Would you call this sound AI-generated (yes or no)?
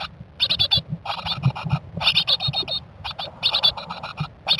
no